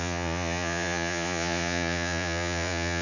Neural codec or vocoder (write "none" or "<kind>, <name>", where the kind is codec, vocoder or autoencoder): vocoder, Vocos